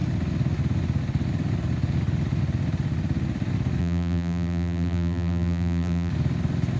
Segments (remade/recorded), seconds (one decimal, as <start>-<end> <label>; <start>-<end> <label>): 0.0-3.8 recorded; 3.8-6.1 remade; 6.1-6.8 recorded